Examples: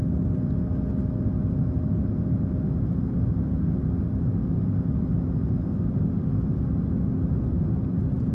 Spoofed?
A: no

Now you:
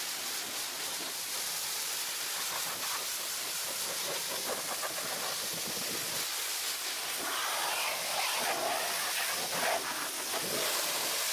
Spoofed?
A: no